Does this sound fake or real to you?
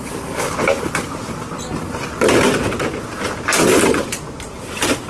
real